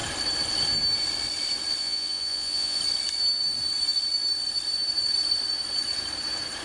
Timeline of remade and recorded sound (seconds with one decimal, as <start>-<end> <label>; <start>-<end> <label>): 0.0-1.8 recorded; 1.8-2.8 remade; 2.8-6.6 recorded